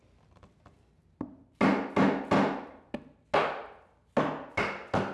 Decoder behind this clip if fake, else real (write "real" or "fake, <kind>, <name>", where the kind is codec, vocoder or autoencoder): real